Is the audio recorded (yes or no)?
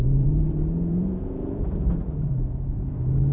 no